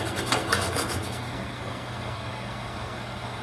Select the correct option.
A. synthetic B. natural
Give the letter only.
A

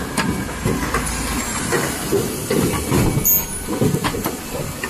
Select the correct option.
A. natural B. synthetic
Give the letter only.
A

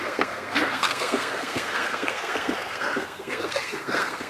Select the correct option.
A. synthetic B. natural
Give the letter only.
A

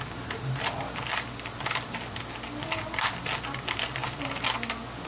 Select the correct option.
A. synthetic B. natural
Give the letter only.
B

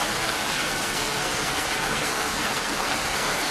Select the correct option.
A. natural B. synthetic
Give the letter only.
B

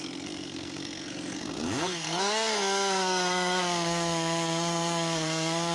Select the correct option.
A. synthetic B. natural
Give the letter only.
A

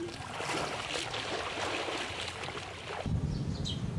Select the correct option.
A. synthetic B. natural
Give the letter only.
B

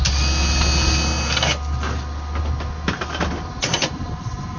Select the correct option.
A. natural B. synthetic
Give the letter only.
A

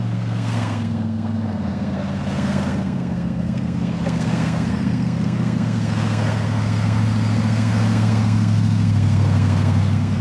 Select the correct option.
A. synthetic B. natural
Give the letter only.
A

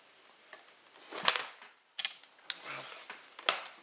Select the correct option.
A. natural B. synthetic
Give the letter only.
A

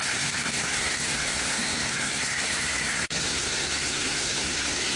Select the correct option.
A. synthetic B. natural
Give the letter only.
A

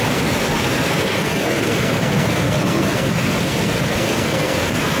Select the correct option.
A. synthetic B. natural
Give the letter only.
A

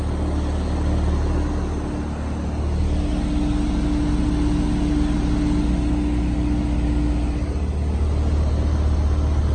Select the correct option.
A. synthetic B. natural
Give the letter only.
B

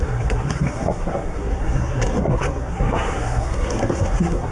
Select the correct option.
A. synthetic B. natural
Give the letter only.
A